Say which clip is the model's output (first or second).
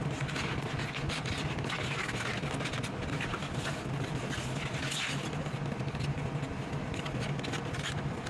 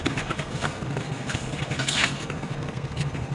second